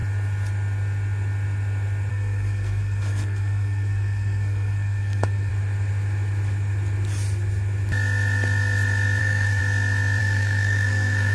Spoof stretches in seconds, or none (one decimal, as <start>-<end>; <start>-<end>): 2.1-5.5; 9.2-9.6; 10.2-11.3